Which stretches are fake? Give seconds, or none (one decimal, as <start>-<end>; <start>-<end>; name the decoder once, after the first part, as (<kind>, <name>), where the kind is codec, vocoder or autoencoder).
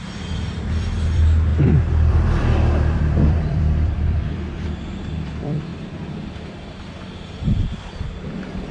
0.0-1.5 (vocoder, BigVGAN v2); 2.1-8.7